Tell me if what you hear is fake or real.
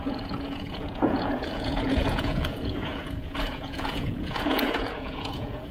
fake